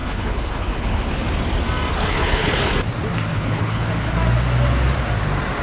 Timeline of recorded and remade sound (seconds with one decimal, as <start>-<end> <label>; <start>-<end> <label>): 0.0-1.1 remade; 1.1-1.9 recorded; 1.9-2.7 remade; 2.7-3.3 recorded; 3.3-3.9 remade; 3.9-5.6 recorded